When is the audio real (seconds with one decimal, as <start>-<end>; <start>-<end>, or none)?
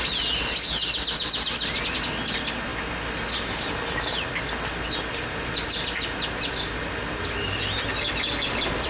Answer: 0.0-8.9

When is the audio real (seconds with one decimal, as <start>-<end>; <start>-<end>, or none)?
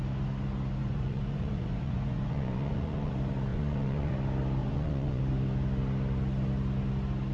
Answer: 0.0-0.8; 3.1-3.5; 4.1-4.6; 5.2-7.3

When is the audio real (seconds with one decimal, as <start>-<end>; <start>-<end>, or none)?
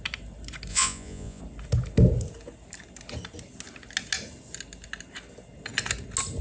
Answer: 0.0-0.7; 1.4-6.4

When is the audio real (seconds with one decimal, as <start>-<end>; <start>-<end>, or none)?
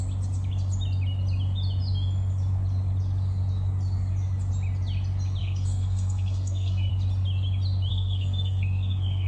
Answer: 0.0-5.4; 6.9-7.9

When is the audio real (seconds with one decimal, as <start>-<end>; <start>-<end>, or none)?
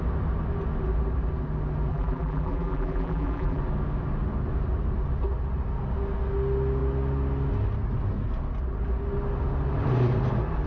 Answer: 0.0-1.9; 3.6-10.7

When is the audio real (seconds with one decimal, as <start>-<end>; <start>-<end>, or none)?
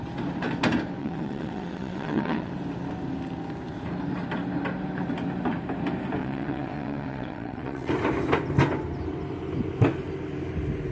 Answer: 0.0-1.0; 2.5-6.2; 7.9-10.9